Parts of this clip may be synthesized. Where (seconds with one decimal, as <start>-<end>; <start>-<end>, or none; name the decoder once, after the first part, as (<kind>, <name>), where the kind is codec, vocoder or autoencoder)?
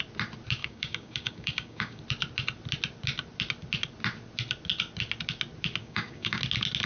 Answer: 0.6-2.0 (codec, DAC); 5.8-6.4